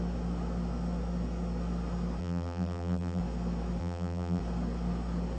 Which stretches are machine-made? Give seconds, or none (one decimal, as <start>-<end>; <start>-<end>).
2.2-3.2; 3.8-4.4